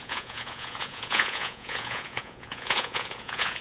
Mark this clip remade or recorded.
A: remade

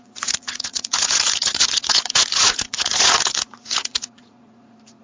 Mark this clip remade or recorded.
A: remade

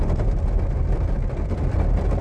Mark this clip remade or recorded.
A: recorded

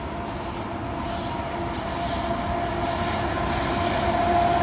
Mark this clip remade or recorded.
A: recorded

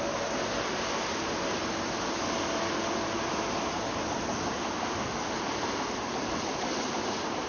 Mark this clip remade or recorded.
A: recorded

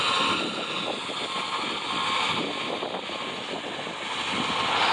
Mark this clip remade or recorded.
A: recorded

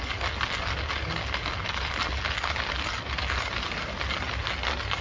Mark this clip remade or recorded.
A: recorded